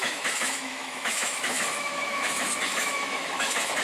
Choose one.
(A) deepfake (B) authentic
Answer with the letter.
A